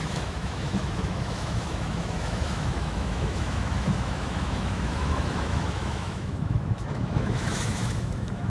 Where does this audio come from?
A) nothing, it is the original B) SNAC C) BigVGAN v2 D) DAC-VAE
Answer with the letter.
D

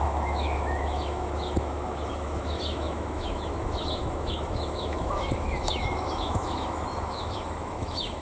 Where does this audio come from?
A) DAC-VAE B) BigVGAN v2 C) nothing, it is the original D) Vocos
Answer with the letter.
A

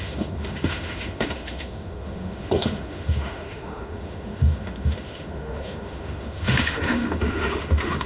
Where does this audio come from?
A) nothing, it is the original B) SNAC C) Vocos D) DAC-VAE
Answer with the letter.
D